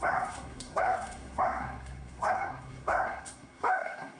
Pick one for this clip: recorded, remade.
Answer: remade